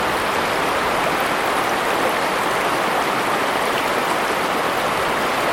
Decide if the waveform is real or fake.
real